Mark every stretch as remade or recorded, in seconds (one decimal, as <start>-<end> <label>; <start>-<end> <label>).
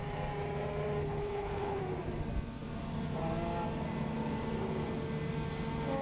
0.0-1.0 recorded; 1.0-1.8 remade; 1.8-6.0 recorded